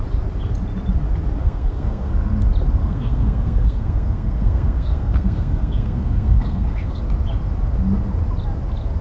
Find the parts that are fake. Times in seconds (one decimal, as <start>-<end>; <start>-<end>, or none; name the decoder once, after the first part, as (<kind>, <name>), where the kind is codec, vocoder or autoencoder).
1.4-2.1 (codec, SNAC); 2.8-7.0